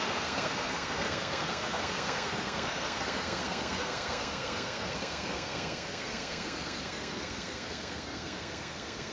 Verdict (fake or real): fake